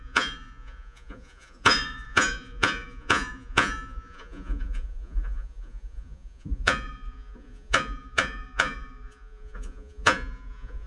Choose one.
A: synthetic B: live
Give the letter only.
A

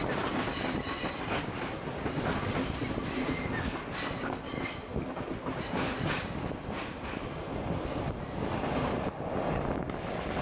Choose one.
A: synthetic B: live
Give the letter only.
B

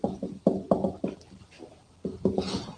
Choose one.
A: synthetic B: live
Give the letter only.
B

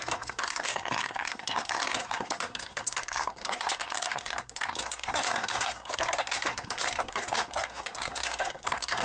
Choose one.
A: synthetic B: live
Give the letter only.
A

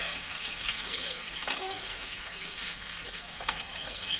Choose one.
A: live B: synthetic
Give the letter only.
B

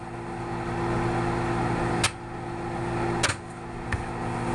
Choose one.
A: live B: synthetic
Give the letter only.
A